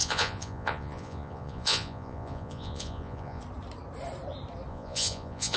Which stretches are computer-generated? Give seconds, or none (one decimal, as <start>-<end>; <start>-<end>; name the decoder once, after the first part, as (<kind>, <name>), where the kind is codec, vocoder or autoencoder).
0.0-3.4 (vocoder, Vocos); 4.7-5.6